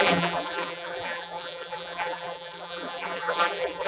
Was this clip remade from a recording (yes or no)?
yes